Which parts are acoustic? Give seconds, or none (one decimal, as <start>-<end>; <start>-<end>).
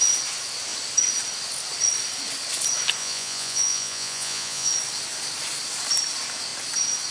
0.0-3.0; 4.7-7.1